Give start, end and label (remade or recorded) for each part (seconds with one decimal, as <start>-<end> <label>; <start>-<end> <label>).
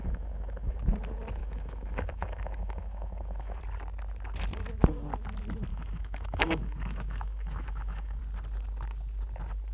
0.0-0.8 remade; 0.8-1.4 recorded; 1.4-3.6 remade; 3.6-5.7 recorded; 5.7-8.2 remade; 8.2-9.7 recorded